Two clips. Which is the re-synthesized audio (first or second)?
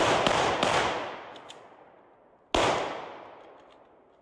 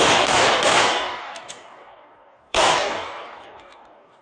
second